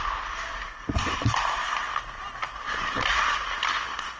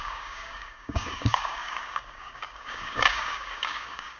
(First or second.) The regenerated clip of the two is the second